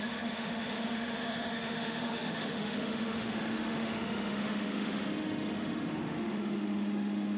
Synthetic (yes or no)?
yes